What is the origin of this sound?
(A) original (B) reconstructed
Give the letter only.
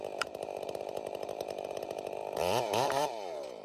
B